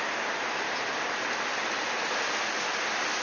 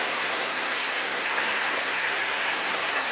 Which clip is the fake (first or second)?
second